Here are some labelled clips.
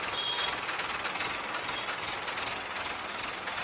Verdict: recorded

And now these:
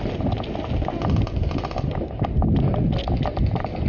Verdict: recorded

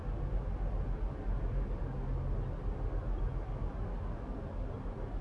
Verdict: recorded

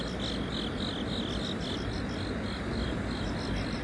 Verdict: recorded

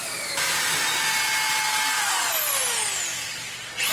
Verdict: recorded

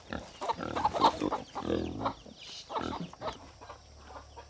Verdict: recorded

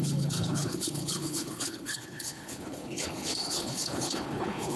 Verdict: remade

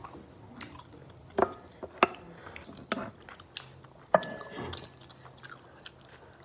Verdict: recorded